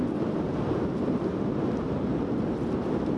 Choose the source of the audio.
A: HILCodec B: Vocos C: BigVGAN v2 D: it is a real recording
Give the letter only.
D